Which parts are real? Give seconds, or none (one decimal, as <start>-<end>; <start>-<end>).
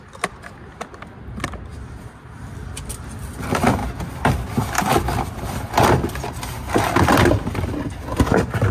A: 0.0-8.7